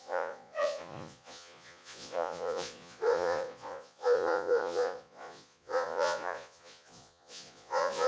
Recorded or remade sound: remade